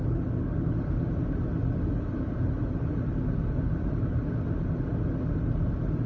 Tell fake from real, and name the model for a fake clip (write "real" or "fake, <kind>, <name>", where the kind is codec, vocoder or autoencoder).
real